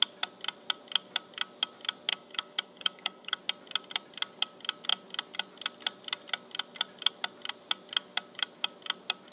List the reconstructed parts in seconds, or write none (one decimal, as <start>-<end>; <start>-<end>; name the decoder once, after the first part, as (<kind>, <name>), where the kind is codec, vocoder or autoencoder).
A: 2.1-3.4 (codec, DAC)